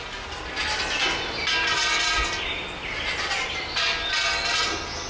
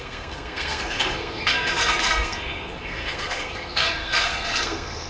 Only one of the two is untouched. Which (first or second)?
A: first